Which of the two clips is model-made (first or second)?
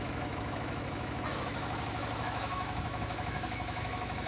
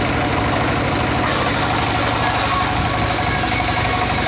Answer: first